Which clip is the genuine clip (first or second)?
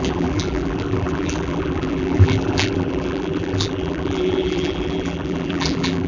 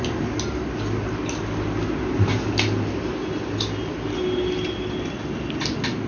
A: second